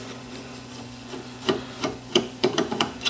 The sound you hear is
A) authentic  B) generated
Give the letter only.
B